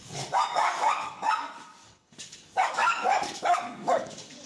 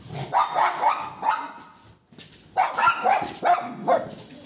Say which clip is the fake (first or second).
first